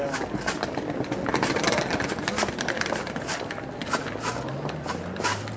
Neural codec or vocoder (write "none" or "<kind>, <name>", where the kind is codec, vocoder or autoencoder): none